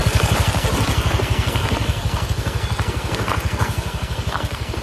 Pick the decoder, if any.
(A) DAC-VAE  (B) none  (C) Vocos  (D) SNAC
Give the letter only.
D